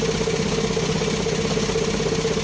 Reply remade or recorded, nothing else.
recorded